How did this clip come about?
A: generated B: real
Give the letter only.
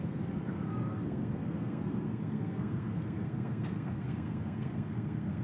A